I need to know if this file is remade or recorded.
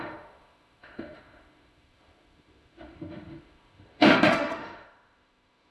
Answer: remade